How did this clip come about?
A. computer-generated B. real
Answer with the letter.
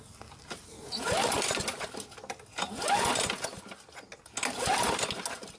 B